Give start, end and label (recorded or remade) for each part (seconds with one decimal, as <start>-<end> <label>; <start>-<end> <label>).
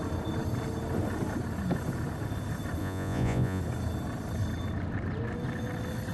0.0-2.8 recorded; 2.8-3.6 remade; 3.6-6.1 recorded